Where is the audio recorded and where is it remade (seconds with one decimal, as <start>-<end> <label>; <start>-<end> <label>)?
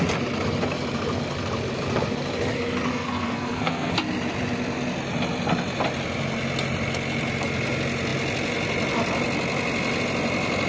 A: 0.0-2.9 recorded; 2.9-3.9 remade; 3.9-10.7 recorded